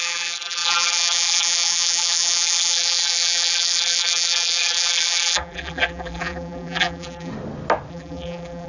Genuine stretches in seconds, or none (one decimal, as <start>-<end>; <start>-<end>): 7.3-7.9